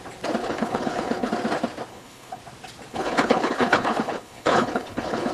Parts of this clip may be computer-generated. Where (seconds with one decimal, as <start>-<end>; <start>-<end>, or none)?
0.4-1.3; 1.9-2.4; 2.9-5.3